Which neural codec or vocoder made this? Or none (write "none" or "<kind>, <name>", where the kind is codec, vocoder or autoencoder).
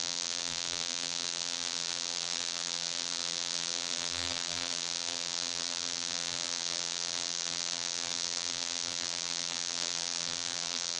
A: vocoder, BigVGAN v2